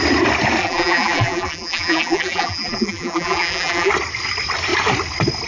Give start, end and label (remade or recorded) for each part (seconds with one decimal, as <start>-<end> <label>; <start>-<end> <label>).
0.0-0.6 recorded; 0.6-3.9 remade; 3.9-5.5 recorded